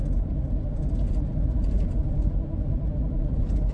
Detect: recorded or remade recorded